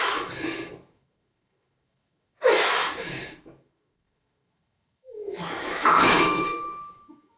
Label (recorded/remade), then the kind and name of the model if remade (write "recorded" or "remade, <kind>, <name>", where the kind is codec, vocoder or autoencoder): remade, autoencoder, DAC-VAE